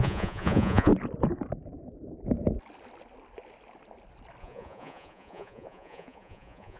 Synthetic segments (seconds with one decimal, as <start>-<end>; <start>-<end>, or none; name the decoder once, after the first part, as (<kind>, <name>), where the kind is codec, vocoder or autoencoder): 0.0-0.9 (vocoder, Vocos); 4.4-6.8